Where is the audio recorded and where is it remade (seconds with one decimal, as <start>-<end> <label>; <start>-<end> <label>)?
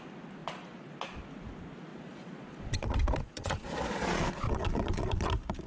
0.0-0.4 recorded; 0.4-1.2 remade; 1.2-1.9 recorded; 1.9-5.3 remade; 5.3-5.7 recorded